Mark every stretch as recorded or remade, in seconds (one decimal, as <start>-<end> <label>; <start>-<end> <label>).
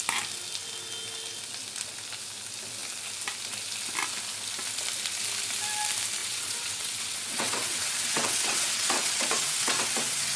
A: 0.0-6.2 recorded; 6.2-10.4 remade